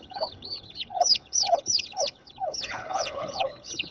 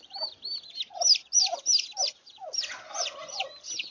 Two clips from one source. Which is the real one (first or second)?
second